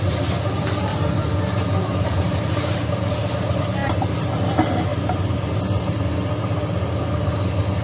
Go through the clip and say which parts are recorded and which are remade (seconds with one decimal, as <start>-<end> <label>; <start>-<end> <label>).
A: 0.0-0.9 recorded; 0.9-2.9 remade; 2.9-3.8 recorded; 3.8-4.3 remade; 4.3-4.9 recorded; 4.9-6.0 remade; 6.0-7.8 recorded